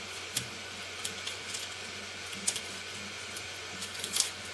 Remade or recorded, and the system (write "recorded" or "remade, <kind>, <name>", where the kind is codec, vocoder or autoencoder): remade, vocoder, Vocos